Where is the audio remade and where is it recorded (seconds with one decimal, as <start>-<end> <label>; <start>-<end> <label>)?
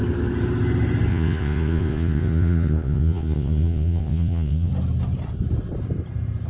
0.0-1.1 recorded; 1.1-4.7 remade; 4.7-6.5 recorded